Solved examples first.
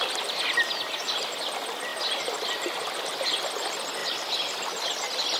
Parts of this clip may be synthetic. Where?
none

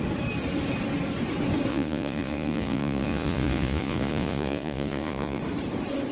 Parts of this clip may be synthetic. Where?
1.7-5.4 (vocoder, Vocos)

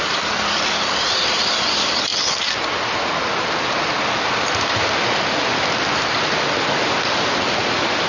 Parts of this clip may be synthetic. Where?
none

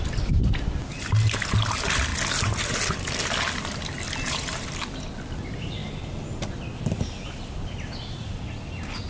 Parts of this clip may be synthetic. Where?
none

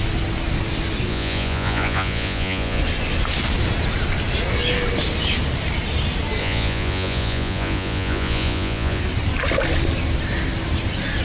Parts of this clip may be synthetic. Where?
1.1-2.8 (vocoder, Vocos); 6.4-9.0

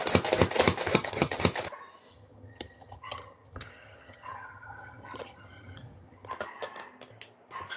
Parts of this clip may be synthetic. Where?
0.9-1.4 (vocoder, HiFi-GAN); 2.1-6.3